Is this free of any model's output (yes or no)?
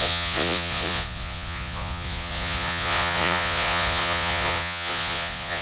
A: no